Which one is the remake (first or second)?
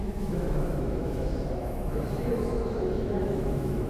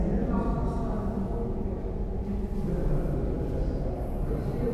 first